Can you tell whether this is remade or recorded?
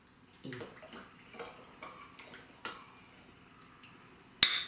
recorded